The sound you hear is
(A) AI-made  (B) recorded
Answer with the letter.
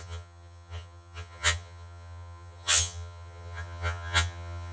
A